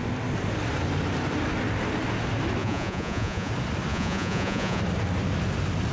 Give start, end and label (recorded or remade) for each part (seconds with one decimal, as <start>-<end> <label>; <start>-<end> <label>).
0.0-2.6 recorded; 2.6-3.5 remade; 3.5-3.9 recorded; 3.9-4.8 remade; 4.8-5.9 recorded